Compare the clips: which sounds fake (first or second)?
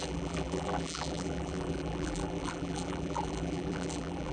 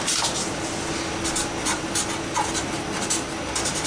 first